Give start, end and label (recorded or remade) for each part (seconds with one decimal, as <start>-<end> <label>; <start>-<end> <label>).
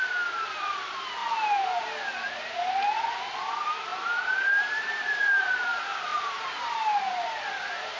0.0-3.9 recorded; 3.9-5.6 remade; 5.6-6.1 recorded; 6.1-6.7 remade; 6.7-8.0 recorded